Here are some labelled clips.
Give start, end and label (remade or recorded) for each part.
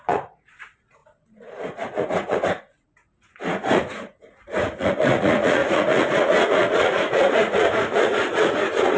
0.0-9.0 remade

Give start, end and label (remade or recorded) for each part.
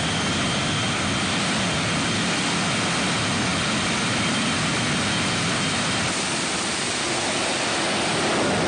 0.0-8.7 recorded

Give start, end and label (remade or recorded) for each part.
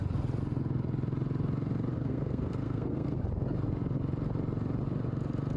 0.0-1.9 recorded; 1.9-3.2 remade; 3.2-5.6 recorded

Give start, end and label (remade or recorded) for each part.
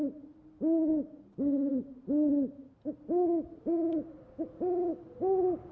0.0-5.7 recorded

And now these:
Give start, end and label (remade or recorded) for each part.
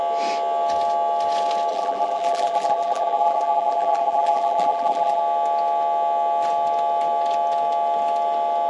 0.0-1.7 recorded; 1.7-5.2 remade; 5.2-8.7 recorded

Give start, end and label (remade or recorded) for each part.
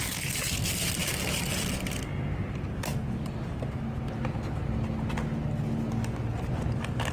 0.0-7.1 recorded